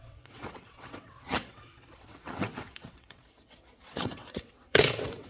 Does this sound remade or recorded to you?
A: remade